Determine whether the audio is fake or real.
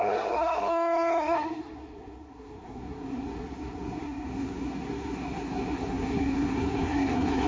fake